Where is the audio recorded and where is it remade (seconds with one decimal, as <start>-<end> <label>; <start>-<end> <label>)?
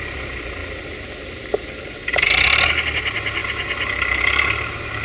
0.0-5.0 recorded